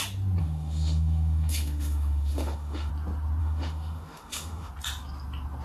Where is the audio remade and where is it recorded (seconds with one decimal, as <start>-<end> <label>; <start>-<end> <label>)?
0.0-0.4 recorded; 0.4-2.9 remade; 2.9-3.4 recorded; 3.4-4.7 remade; 4.7-5.6 recorded